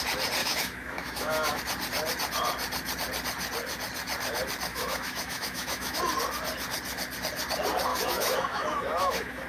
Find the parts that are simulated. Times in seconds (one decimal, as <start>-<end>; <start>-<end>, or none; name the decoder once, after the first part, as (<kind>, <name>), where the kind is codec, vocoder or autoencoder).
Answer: 0.4-1.6 (autoencoder, DAC-VAE); 4.7-6.0; 7.9-9.5